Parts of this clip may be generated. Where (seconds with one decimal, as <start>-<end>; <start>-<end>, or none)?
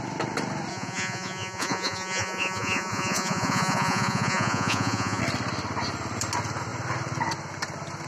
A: 0.7-5.2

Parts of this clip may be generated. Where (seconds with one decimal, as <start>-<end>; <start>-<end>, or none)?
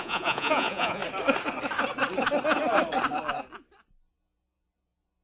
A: 0.0-1.0; 4.1-5.2